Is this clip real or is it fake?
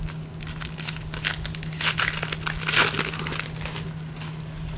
real